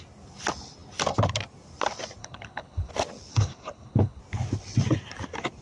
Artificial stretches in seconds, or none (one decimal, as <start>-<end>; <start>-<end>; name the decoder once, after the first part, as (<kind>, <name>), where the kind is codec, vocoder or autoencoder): 2.2-2.9 (codec, HILCodec); 3.3-4.2